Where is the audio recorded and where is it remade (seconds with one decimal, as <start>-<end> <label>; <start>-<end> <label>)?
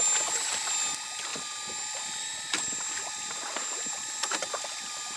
0.0-5.2 recorded